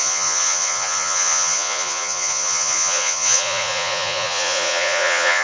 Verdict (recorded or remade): remade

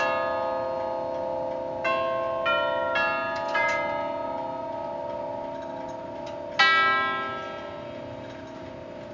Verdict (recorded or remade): recorded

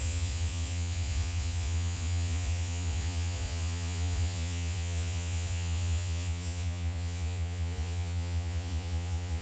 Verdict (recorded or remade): remade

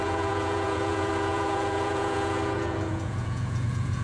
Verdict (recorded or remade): remade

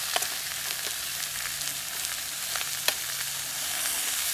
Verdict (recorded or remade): recorded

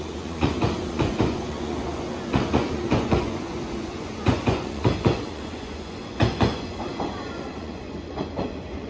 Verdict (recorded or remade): remade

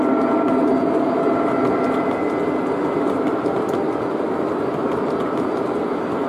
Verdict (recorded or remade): recorded